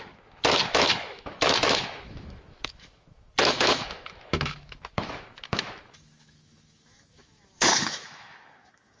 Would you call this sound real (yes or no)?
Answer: no